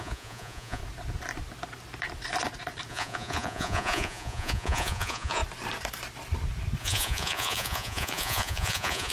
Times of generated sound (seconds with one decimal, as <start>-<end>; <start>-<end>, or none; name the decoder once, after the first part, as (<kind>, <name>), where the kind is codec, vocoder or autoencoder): 0.0-0.8 (vocoder, Vocos); 2.9-5.4; 6.8-9.1